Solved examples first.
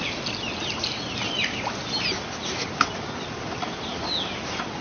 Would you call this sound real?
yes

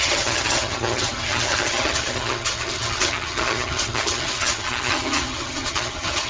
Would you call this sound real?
no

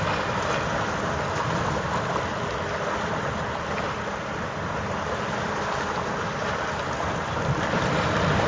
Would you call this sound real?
yes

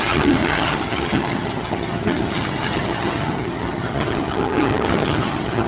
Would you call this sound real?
no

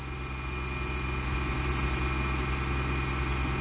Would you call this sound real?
yes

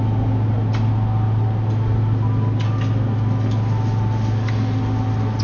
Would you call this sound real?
yes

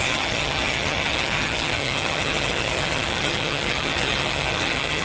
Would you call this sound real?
no